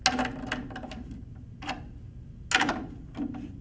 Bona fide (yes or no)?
yes